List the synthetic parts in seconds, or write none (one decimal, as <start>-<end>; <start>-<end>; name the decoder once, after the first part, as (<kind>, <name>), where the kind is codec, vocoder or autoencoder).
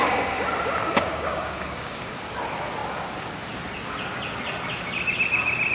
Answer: 0.8-2.1 (codec, DAC)